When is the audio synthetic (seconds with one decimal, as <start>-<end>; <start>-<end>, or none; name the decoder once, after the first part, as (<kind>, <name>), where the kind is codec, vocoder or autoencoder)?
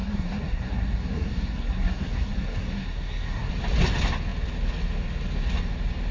0.0-3.5 (codec, SNAC)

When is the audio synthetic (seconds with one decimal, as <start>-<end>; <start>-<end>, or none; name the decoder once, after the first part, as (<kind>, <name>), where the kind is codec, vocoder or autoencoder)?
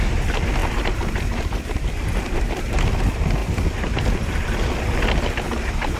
0.6-2.4 (vocoder, BigVGAN v2)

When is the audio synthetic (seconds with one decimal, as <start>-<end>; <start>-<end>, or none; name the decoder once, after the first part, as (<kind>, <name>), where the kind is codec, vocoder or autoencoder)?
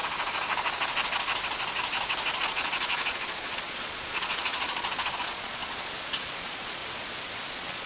2.4-6.8 (vocoder, Vocos); 7.5-7.9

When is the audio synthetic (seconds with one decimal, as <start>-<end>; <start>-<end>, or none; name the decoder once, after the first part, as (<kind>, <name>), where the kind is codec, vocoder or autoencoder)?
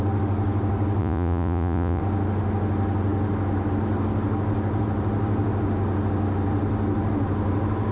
1.0-2.0 (vocoder, Vocos)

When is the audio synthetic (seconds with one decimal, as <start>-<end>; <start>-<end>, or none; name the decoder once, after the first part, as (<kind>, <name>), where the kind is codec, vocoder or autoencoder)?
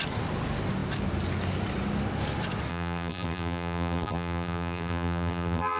2.7-5.8 (vocoder, BigVGAN v2)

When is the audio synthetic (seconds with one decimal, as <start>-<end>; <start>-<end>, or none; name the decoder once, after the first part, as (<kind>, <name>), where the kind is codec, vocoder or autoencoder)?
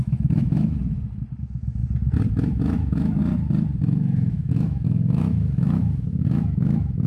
0.0-0.8 (autoencoder, DAC-VAE); 1.4-1.8; 2.3-3.2; 3.8-7.1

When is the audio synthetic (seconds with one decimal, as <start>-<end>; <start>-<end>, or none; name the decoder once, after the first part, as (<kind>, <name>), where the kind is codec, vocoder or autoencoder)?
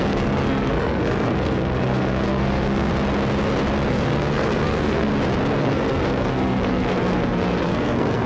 0.0-2.9 (codec, SNAC); 3.9-5.1; 5.6-8.3